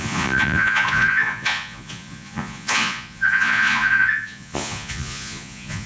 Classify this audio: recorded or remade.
remade